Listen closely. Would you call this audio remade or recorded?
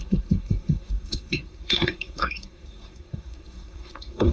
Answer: remade